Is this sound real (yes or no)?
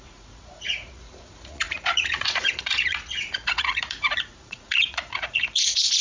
no